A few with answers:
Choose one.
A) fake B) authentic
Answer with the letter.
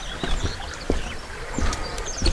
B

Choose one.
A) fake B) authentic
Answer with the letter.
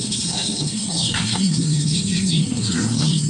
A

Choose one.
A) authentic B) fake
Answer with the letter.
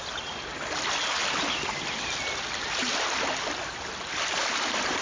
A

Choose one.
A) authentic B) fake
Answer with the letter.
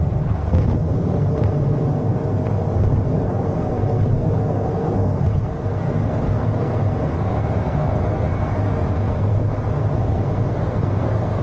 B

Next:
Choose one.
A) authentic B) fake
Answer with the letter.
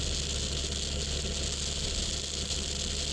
A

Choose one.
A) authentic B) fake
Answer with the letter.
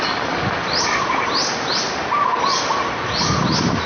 A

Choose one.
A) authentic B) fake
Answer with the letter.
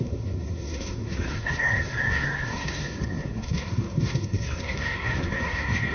B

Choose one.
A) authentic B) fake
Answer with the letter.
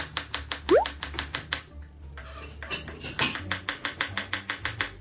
A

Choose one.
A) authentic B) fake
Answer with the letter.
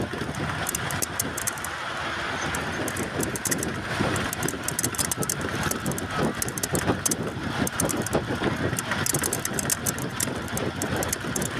A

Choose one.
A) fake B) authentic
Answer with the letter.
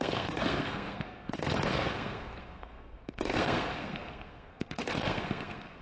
A